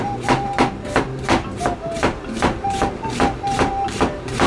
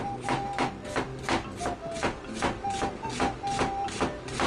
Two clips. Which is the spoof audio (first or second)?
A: first